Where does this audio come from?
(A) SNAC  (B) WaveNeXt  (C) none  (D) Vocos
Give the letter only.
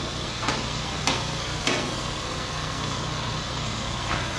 A